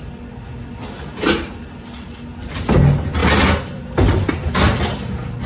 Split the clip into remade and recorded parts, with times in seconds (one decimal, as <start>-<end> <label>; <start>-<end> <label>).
0.0-5.5 recorded